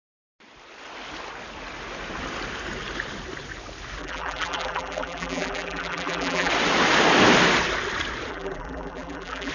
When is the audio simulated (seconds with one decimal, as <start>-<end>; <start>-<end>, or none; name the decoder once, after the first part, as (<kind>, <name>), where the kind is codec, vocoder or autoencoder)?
4.0-6.5 (vocoder, BigVGAN v2); 8.3-9.5